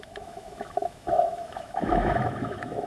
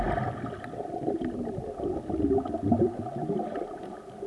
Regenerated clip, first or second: first